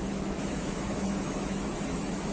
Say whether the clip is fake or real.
fake